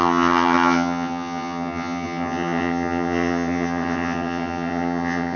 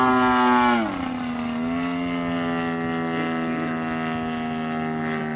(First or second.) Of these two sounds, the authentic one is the second